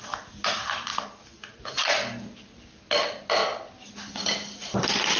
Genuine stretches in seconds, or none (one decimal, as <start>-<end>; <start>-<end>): 0.0-5.2